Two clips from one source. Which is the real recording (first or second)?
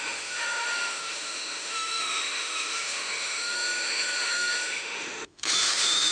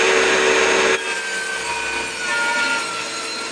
second